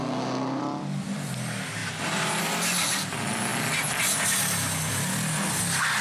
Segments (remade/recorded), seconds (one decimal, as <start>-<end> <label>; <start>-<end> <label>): 0.0-0.6 remade; 0.6-6.0 recorded